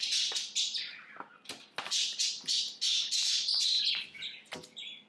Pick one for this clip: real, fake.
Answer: real